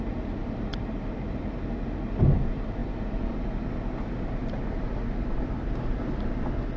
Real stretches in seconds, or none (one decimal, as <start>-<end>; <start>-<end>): 0.0-0.4; 1.4-6.8